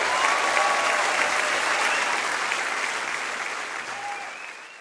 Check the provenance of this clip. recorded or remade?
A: recorded